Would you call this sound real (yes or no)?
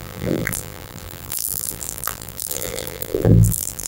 no